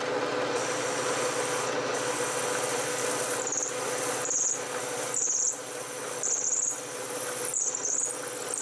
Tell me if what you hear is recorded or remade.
recorded